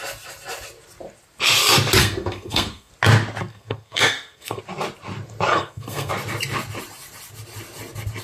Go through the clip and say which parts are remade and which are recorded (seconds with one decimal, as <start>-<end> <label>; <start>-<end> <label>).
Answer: 0.0-2.0 recorded; 2.0-2.9 remade; 2.9-3.5 recorded; 3.5-4.6 remade; 4.6-5.5 recorded; 5.5-6.1 remade; 6.1-8.2 recorded